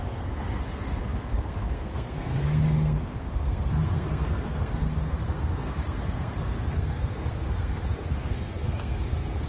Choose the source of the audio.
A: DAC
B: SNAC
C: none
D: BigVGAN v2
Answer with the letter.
B